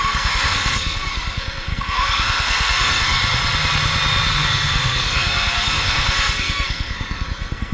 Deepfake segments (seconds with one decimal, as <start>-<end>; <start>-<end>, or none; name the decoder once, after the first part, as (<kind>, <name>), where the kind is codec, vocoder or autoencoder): 0.0-3.2 (codec, SNAC); 4.3-7.7